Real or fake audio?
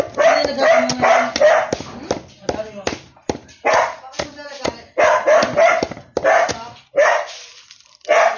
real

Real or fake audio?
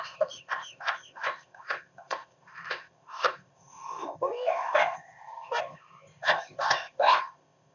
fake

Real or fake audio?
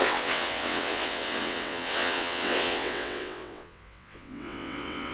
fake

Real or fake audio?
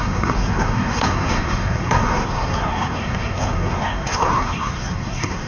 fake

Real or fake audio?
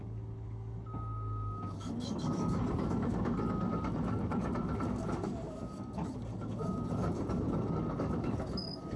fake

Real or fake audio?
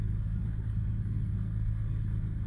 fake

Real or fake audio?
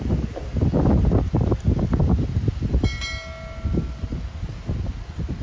real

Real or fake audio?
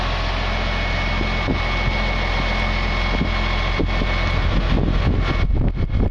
real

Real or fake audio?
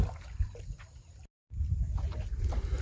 real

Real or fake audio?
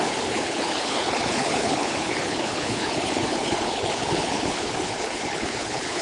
fake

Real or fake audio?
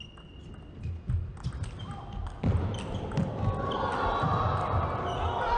real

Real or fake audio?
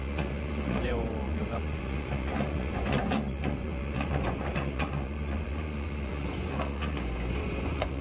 fake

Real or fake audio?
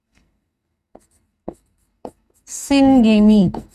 fake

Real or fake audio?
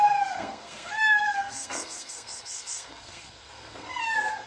fake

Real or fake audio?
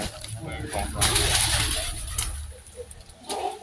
real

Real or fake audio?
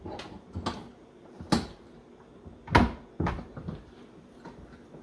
real